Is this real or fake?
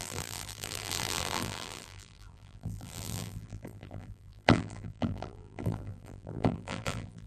fake